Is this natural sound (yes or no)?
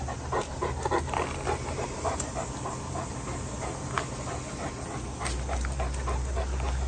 yes